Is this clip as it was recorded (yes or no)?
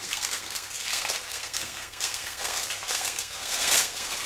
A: no